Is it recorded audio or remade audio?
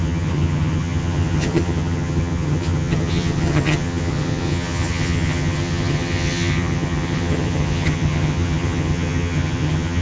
remade